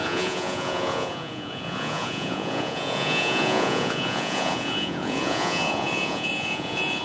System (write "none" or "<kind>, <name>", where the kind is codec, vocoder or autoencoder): vocoder, Vocos